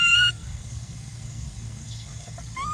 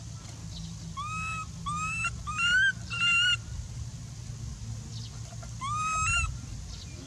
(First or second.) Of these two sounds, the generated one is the first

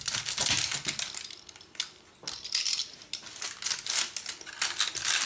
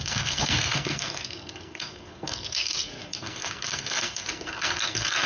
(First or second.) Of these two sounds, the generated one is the second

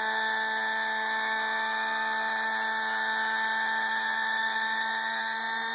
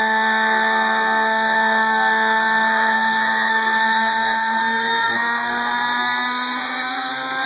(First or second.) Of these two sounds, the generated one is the second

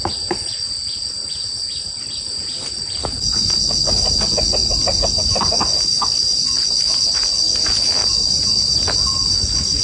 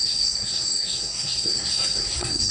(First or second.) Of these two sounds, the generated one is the second